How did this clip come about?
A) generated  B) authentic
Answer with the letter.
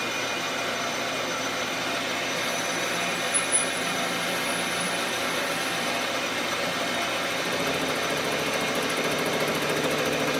B